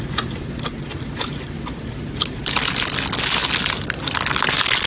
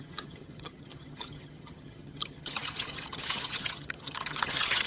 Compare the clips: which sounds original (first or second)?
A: first